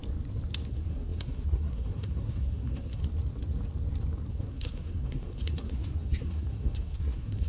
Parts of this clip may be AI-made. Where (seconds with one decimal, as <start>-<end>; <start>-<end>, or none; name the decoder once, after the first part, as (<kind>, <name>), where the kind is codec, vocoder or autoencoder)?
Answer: 0.7-3.0 (codec, SNAC); 4.3-7.5